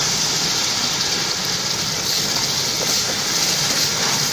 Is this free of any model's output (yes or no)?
yes